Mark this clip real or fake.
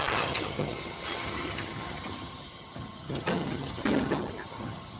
fake